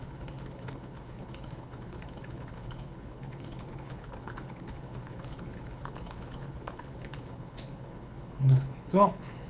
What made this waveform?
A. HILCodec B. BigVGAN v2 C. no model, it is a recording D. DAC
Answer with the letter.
A